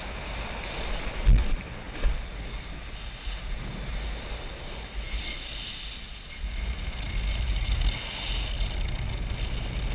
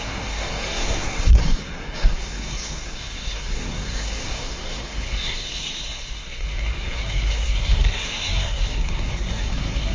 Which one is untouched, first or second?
first